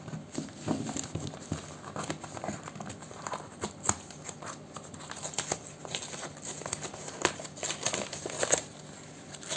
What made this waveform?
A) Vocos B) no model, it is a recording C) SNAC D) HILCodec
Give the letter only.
B